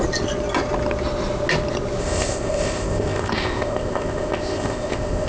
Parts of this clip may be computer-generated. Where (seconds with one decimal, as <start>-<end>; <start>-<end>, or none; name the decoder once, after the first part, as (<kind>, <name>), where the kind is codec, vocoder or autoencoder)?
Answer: 2.0-5.3 (codec, ZipCodec)